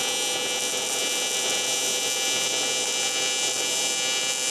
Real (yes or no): yes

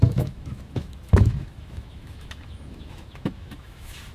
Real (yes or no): no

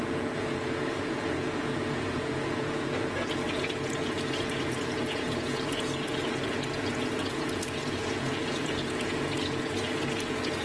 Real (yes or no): no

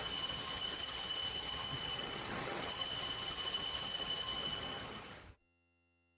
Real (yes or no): no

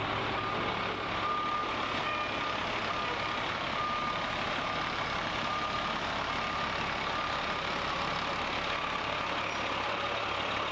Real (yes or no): yes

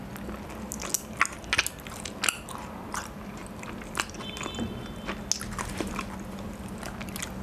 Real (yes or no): yes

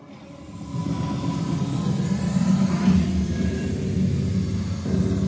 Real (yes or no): yes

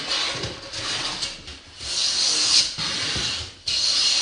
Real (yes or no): yes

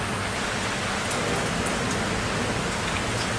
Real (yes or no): yes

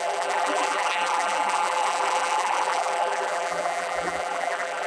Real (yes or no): no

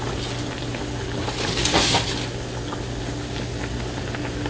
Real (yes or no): yes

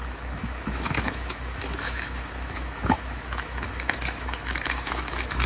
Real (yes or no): no